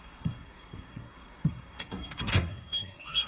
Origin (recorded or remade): remade